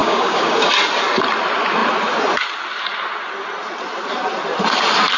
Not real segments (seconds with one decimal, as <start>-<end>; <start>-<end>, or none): 0.0-0.7